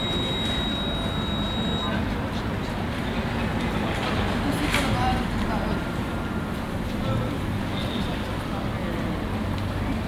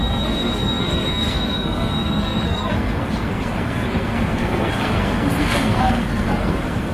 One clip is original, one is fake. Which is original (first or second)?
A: first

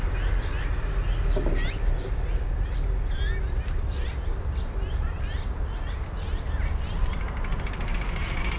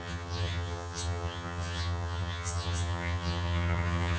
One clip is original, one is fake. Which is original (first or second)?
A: first